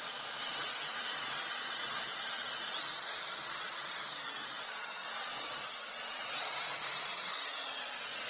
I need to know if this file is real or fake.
fake